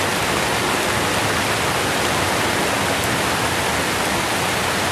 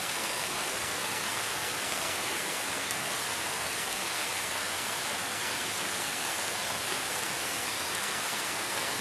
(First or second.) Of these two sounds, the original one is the first